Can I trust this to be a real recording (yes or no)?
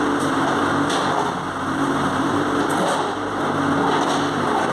yes